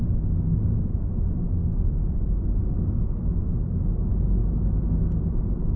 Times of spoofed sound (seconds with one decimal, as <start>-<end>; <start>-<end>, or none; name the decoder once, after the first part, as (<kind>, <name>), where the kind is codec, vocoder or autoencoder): none